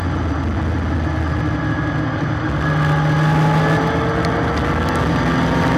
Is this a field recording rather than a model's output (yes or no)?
yes